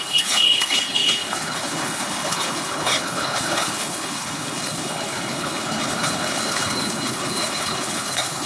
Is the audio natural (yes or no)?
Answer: no